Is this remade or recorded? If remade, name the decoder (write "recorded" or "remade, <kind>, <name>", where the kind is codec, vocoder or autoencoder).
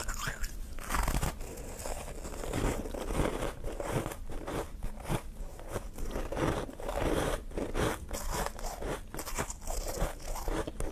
recorded